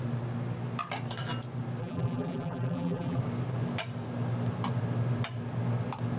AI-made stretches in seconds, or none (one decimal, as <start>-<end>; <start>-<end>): 1.8-3.2